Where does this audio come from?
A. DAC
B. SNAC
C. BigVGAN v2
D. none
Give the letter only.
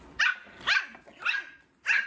D